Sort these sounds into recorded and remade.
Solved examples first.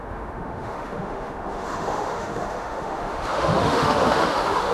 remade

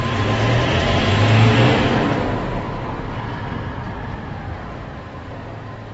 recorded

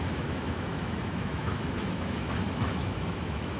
remade